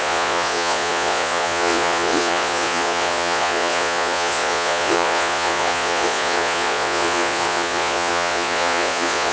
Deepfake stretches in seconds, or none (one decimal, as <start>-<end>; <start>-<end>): 0.0-9.3

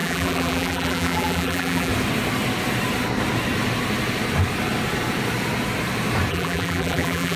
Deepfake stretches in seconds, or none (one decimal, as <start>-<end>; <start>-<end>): 0.0-1.9; 6.3-7.4